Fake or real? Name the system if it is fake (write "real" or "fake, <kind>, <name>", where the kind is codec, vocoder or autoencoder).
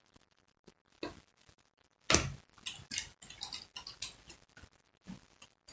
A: real